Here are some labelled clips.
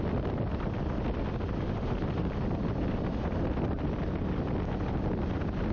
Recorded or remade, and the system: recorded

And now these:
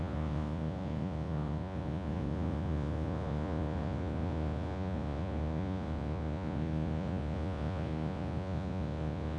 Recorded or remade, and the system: remade, vocoder, Vocos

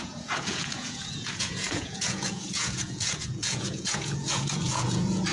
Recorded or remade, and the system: remade, vocoder, Vocos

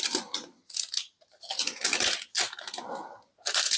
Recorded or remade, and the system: recorded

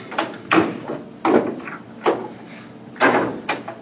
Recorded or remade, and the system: recorded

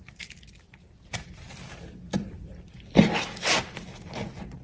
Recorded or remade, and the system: recorded